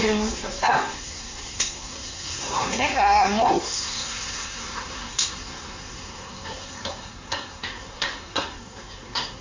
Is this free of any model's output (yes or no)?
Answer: no